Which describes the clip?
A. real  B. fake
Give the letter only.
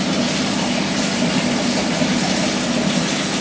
A